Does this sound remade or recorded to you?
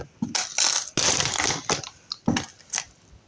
recorded